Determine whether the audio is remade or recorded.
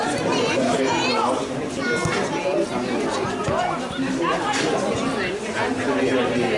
recorded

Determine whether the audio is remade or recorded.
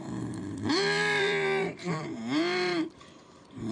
remade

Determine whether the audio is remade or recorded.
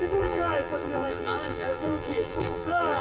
remade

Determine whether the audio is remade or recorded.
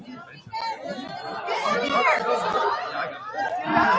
recorded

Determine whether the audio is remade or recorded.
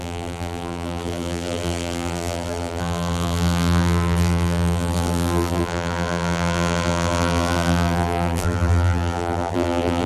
remade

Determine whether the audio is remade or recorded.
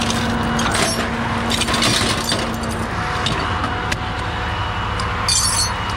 recorded